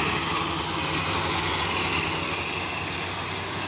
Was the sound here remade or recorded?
recorded